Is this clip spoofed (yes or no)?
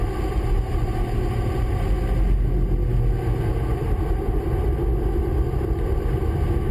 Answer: no